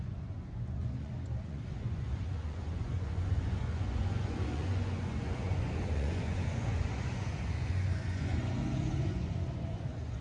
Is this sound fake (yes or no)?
yes